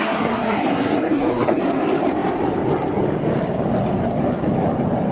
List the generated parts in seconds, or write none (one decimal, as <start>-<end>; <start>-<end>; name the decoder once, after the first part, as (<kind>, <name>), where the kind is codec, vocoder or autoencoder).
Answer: 0.0-1.6 (codec, SNAC)